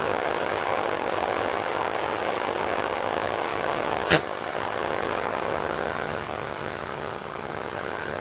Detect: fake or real fake